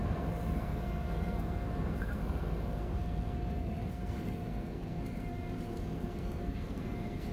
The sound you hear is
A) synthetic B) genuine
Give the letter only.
A